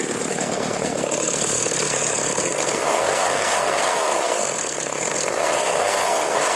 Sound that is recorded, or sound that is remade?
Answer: remade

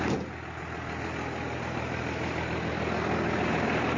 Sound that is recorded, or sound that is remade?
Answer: recorded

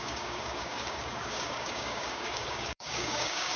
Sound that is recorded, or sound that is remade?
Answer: remade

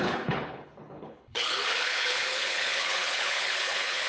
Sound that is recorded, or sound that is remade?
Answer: remade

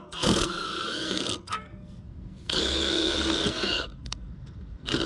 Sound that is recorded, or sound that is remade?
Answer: remade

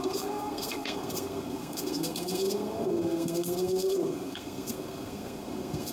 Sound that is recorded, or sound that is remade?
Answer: remade